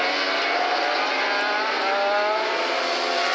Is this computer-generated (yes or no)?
no